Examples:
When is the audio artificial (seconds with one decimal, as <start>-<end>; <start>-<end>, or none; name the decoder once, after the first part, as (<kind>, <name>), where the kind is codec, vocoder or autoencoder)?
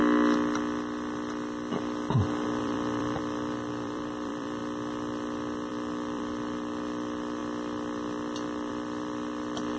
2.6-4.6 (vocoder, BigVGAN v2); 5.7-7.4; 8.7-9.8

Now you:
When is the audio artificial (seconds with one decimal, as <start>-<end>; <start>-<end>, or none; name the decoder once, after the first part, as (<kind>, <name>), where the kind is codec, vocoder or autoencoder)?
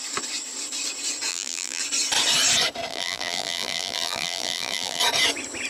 1.3-1.8 (vocoder, BigVGAN v2); 2.9-5.0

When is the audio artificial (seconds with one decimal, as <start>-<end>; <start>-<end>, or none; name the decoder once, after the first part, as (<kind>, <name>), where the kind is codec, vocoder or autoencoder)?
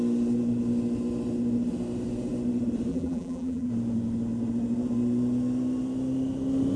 2.9-3.7 (vocoder, BigVGAN v2)